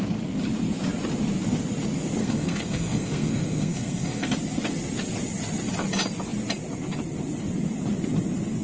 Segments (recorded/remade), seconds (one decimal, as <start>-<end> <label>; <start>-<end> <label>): 0.0-2.2 recorded; 2.2-4.3 remade; 4.3-8.6 recorded